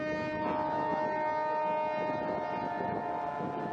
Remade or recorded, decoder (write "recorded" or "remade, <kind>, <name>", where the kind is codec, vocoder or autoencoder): recorded